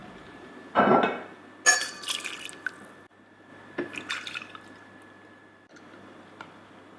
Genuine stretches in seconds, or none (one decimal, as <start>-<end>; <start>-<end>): 0.8-1.7; 2.3-7.0